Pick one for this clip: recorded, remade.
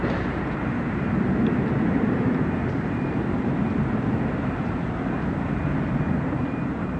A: remade